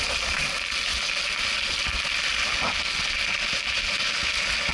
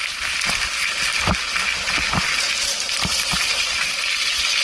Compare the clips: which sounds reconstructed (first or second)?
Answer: second